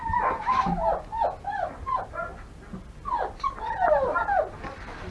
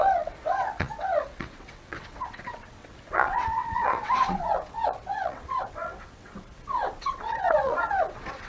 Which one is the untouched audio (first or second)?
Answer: first